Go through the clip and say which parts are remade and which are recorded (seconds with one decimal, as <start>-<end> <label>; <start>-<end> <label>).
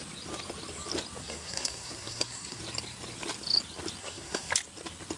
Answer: 0.0-1.2 recorded; 1.2-2.6 remade; 2.6-4.0 recorded; 4.0-4.5 remade; 4.5-5.2 recorded